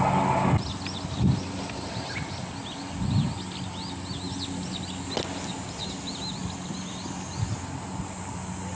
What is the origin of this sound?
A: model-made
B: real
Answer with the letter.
B